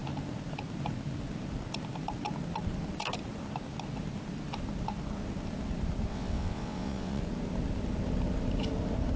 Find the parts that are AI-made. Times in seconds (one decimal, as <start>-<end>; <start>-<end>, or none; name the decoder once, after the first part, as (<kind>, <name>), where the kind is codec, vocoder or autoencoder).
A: 6.1-7.2 (vocoder, WaveNeXt)